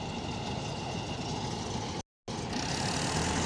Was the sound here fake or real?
real